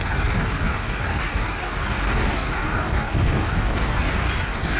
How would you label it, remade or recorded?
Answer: remade